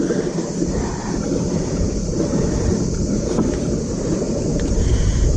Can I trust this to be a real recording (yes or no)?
no